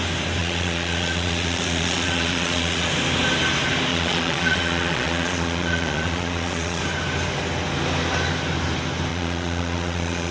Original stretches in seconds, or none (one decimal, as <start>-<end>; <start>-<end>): 0.0-0.4; 2.9-3.9; 6.8-9.1